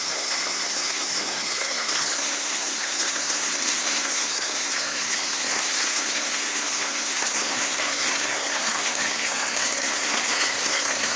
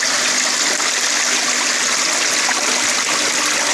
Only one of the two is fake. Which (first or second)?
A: first